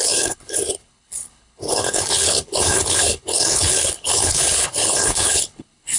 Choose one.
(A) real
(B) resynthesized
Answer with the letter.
B